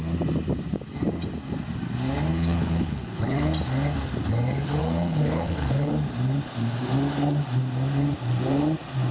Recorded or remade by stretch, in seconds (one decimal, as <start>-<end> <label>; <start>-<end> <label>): 0.0-2.3 recorded; 2.3-3.5 remade; 3.5-4.8 recorded; 4.8-5.9 remade; 5.9-9.1 recorded